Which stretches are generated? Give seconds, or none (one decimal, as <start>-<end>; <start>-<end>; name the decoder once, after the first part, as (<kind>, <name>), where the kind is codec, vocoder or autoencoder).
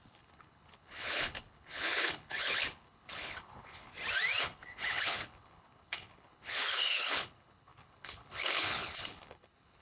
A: 0.0-3.9 (codec, HILCodec); 4.4-9.8